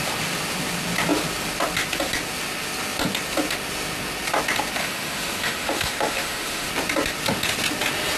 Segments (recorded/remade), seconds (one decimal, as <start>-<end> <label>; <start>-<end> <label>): 0.0-4.8 recorded; 4.8-6.7 remade; 6.7-8.2 recorded